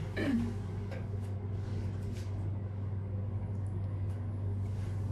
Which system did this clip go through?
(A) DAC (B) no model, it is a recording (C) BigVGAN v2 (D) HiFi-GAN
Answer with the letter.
A